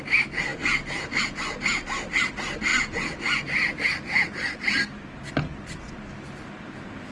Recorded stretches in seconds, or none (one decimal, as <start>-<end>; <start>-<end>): 0.0-7.1